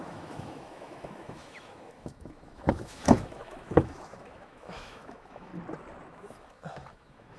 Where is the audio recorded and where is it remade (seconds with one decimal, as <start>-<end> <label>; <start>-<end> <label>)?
0.0-5.5 remade; 5.5-6.1 recorded; 6.1-7.4 remade